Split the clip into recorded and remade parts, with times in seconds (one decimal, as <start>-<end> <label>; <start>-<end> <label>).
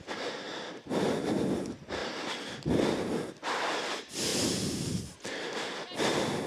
0.0-6.5 recorded